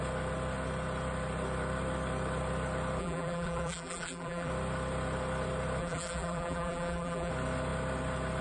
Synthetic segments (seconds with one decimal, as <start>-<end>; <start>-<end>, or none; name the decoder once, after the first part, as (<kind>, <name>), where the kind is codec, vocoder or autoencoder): 3.0-4.5 (vocoder, BigVGAN v2); 5.8-7.3